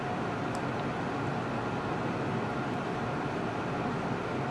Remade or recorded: recorded